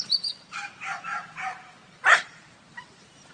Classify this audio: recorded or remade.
remade